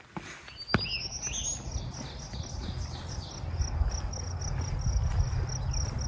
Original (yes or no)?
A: yes